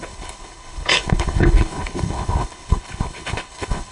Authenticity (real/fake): fake